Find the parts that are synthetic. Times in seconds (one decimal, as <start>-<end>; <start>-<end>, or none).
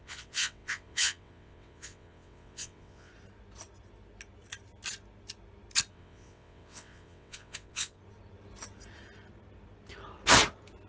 0.0-3.1; 5.9-8.0